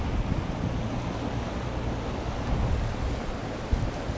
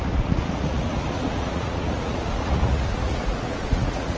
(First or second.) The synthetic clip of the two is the second